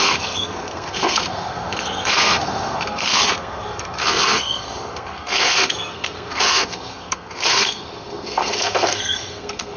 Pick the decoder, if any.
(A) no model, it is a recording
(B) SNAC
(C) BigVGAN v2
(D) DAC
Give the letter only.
B